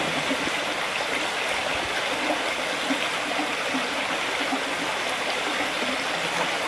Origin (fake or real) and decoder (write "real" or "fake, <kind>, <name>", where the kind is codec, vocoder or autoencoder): real